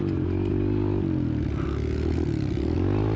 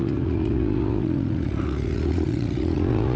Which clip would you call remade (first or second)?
second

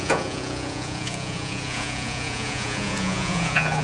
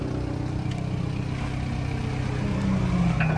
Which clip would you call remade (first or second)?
first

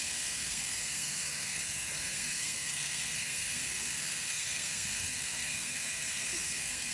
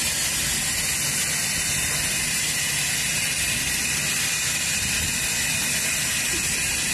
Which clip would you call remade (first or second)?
first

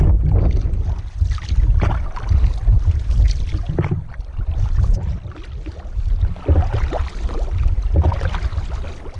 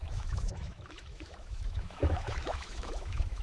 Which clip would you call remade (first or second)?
second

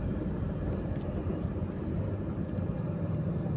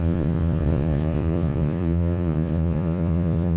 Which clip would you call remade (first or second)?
second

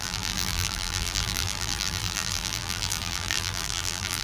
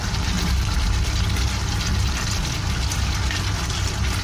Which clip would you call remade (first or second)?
first